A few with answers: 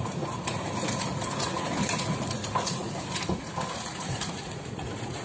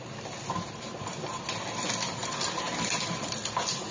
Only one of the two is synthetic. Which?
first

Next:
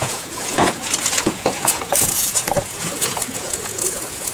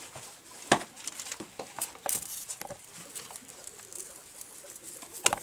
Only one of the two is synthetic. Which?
first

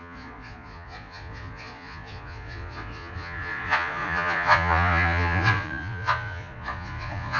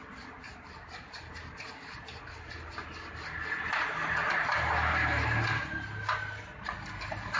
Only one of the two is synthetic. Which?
first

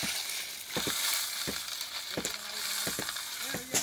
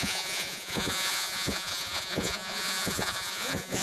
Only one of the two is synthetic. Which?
second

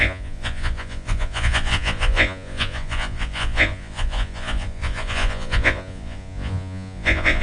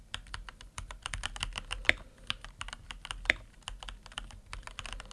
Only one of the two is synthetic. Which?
first